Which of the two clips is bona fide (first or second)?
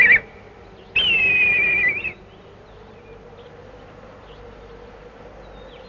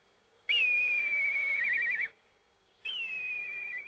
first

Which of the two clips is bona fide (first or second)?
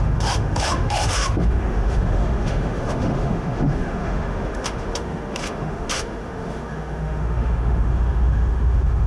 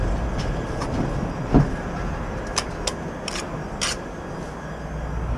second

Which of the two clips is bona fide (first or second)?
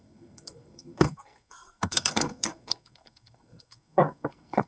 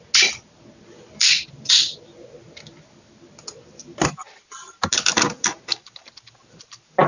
second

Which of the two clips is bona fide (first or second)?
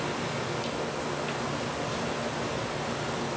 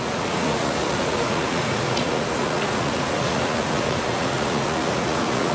first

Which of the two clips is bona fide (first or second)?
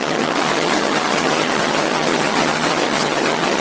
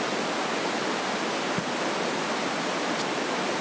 second